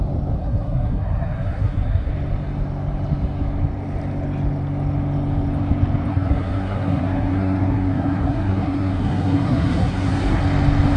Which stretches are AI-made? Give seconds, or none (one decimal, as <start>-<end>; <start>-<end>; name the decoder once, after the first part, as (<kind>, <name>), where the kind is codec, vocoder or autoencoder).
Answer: 0.4-2.1 (codec, SNAC); 6.1-10.4